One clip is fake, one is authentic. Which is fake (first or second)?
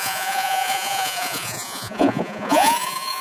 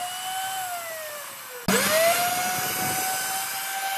first